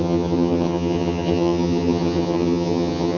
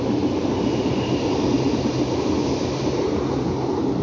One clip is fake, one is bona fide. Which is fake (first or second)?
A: first